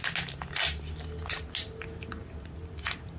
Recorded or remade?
recorded